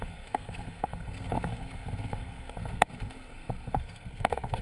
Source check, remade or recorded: remade